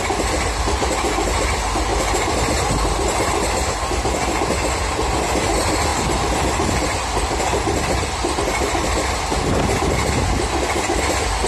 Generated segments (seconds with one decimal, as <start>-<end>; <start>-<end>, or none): none